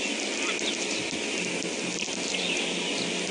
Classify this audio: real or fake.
real